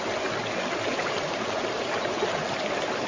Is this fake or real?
real